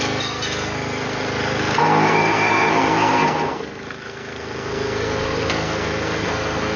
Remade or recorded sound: remade